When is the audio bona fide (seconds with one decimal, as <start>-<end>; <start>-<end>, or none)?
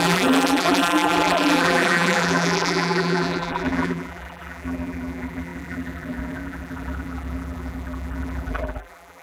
none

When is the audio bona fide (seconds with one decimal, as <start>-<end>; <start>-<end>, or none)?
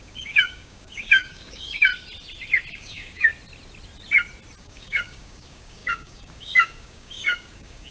1.9-2.7; 3.3-4.6